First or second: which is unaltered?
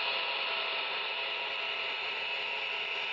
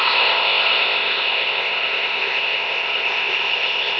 first